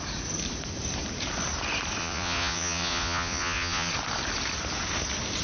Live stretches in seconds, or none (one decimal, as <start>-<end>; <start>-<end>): 0.0-2.0; 3.9-5.4